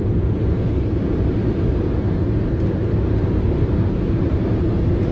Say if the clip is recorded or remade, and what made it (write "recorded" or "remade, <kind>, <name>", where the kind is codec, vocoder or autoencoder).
recorded